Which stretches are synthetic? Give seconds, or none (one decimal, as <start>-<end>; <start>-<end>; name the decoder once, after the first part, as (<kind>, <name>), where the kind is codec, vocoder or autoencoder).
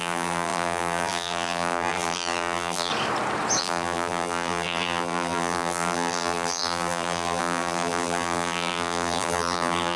0.0-2.9 (vocoder, BigVGAN v2); 3.6-10.0